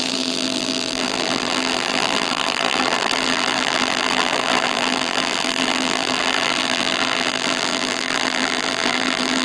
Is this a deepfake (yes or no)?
yes